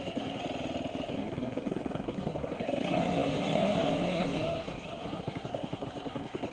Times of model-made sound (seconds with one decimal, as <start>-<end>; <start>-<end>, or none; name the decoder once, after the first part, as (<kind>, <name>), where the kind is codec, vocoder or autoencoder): 0.0-0.4 (codec, SNAC); 1.1-6.5